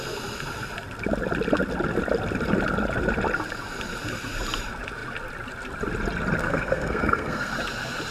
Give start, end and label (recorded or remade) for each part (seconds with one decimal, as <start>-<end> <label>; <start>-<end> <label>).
0.0-6.4 recorded; 6.4-7.5 remade; 7.5-8.1 recorded